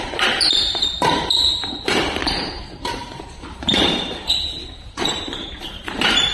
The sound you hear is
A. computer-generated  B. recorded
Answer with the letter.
A